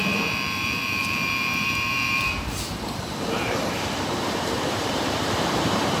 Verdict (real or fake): fake